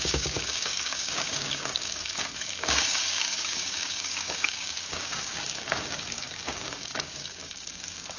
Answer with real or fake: fake